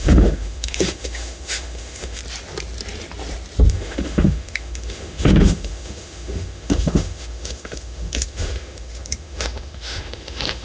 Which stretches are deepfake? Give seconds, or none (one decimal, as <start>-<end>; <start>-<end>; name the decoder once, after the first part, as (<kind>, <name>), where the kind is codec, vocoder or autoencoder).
0.0-2.2 (autoencoder, DAC-VAE); 3.7-10.6